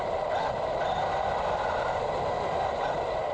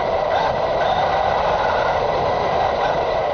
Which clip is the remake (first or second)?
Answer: second